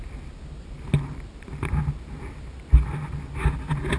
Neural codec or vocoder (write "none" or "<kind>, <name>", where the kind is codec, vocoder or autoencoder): none